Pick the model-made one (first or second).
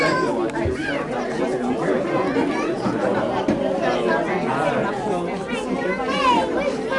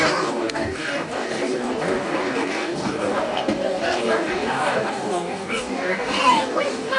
second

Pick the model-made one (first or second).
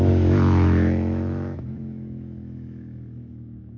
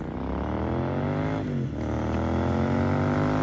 first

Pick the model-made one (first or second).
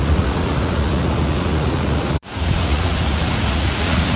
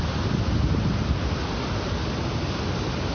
first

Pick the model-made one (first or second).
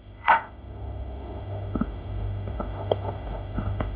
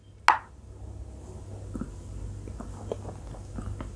first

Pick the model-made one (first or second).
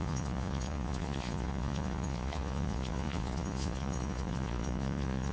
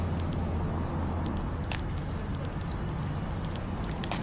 first